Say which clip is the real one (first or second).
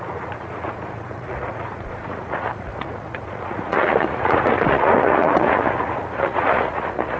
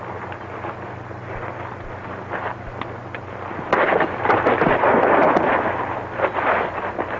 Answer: second